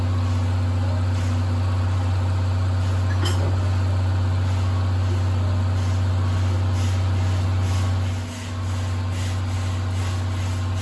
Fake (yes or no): no